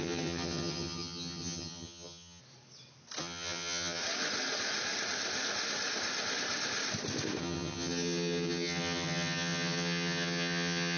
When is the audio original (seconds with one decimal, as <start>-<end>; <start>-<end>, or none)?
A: 2.4-3.2; 4.0-7.4